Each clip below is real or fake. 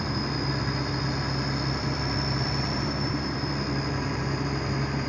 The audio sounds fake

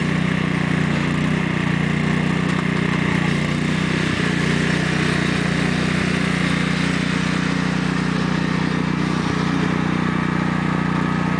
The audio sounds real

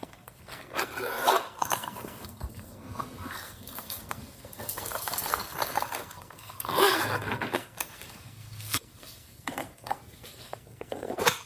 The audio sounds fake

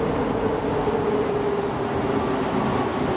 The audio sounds real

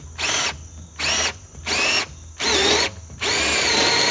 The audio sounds real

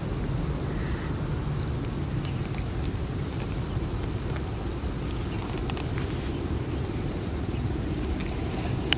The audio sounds real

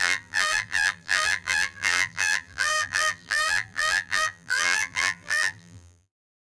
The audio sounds fake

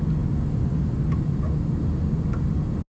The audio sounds real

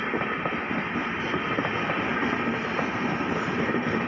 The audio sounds real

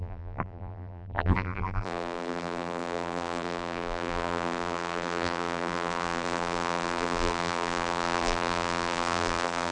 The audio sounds fake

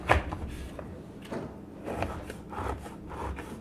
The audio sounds real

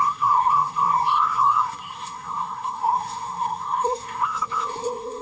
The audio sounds fake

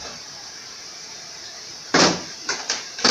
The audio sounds fake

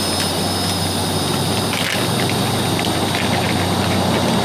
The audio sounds real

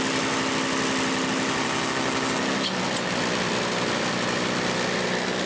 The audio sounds real